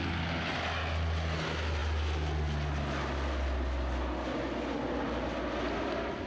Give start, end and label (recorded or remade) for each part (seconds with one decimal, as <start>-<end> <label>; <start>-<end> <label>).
0.0-6.3 recorded